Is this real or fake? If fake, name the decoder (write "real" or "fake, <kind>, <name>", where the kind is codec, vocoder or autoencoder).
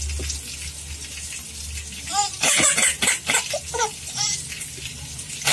real